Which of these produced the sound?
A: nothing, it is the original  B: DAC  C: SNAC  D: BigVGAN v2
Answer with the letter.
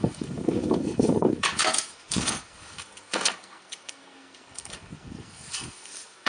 C